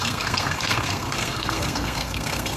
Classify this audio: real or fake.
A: fake